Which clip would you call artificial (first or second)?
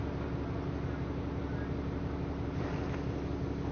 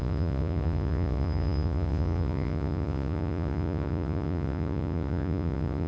second